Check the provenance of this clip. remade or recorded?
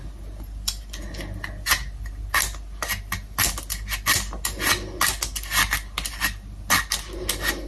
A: recorded